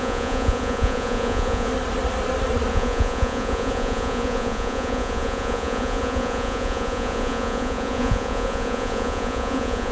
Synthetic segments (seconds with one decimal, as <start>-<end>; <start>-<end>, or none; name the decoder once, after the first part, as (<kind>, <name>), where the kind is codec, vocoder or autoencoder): 0.0-1.7 (vocoder, Vocos); 2.7-9.9